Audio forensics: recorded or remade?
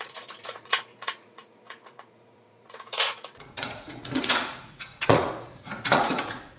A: remade